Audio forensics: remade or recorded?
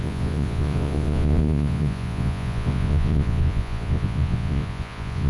remade